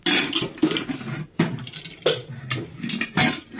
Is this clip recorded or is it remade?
recorded